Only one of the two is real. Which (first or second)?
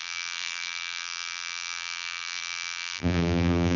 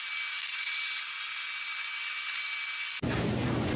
second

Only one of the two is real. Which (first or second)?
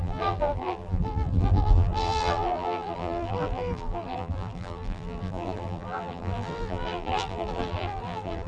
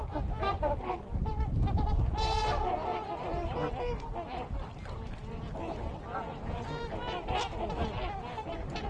second